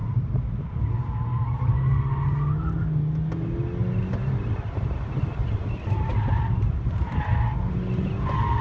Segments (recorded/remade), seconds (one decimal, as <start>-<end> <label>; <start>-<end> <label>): 0.0-5.4 recorded; 5.4-6.4 remade; 6.4-8.6 recorded

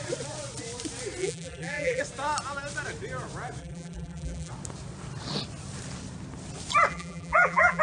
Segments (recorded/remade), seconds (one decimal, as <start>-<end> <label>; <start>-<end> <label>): 0.0-1.2 recorded; 1.2-2.0 remade; 2.0-3.6 recorded; 3.6-4.5 remade; 4.5-6.9 recorded; 6.9-7.8 remade